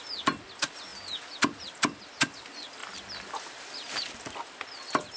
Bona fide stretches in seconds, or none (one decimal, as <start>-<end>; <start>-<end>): 0.0-5.2